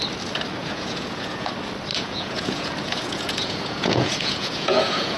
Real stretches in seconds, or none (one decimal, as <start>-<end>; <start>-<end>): 0.0-0.6; 1.5-1.9

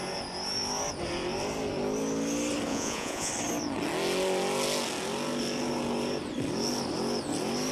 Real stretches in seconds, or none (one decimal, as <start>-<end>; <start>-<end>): 0.0-2.7; 3.3-7.7

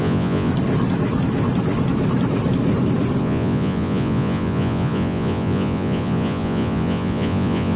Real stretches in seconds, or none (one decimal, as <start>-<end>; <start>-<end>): 0.5-3.2